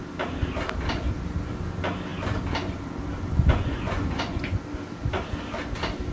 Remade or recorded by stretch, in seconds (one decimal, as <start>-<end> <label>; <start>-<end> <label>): 0.0-3.3 recorded; 3.3-4.6 remade; 4.6-6.1 recorded